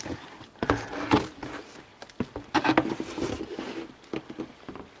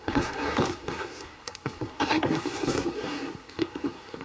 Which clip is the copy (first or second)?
second